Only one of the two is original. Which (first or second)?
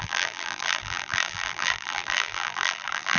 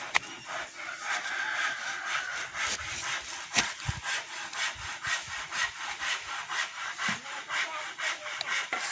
second